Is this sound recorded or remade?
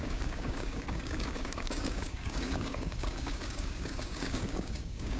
remade